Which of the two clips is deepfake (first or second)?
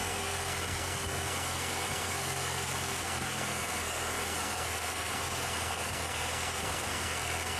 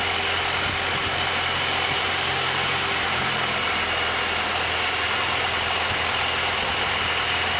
first